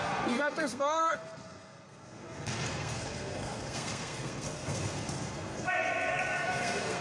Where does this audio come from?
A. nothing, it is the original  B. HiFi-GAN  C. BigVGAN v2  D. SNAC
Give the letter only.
D